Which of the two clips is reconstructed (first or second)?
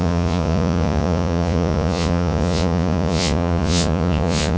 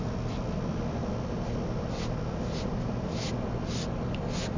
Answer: first